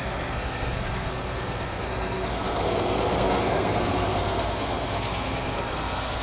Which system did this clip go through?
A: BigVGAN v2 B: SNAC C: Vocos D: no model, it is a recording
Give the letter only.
B